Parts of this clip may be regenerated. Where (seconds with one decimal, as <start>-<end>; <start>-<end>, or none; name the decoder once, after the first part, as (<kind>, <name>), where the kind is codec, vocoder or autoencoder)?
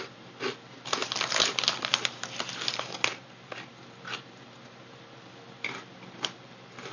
none